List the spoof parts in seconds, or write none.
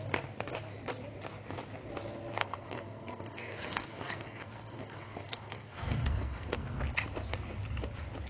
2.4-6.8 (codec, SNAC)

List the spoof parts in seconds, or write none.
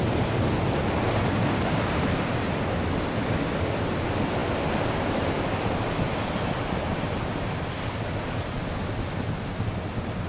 none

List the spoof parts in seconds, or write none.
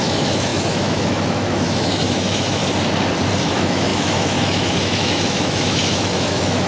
0.0-2.6 (autoencoder, DAC-VAE); 3.5-6.7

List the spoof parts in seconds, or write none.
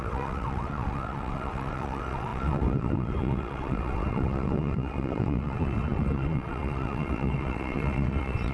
0.0-8.5 (vocoder, WaveNeXt)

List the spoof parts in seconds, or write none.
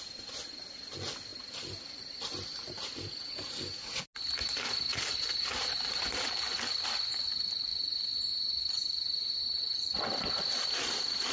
1.3-4.0 (vocoder, BigVGAN v2); 4.9-6.0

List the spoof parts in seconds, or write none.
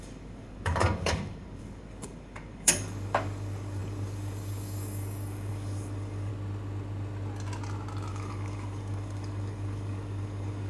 0.0-6.3 (codec, DAC); 8.1-10.7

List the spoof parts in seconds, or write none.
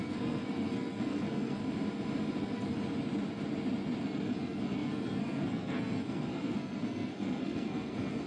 0.0-1.6 (codec, SNAC); 2.4-2.8; 4.0-8.3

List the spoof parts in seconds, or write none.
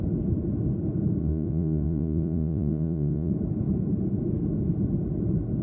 1.2-3.3 (vocoder, Vocos)